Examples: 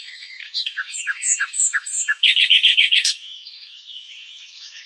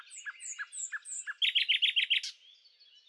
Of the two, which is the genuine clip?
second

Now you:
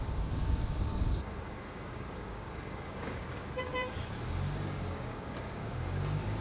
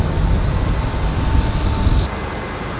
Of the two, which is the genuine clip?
second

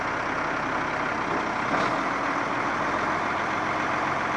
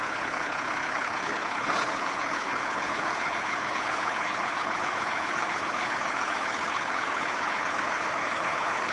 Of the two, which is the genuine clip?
first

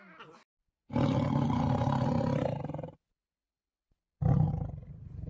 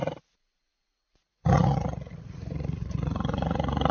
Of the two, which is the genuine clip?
first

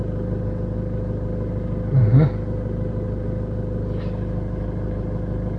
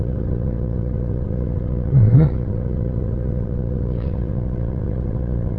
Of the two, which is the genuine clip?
first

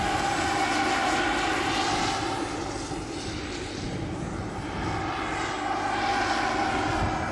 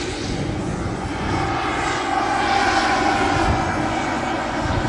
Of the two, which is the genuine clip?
first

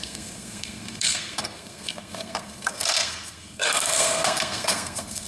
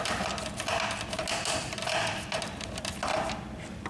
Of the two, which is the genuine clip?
second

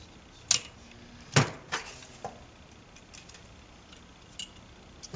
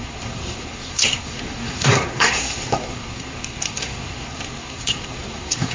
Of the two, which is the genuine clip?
first